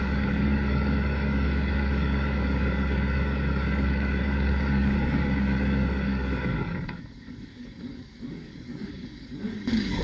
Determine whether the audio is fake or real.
fake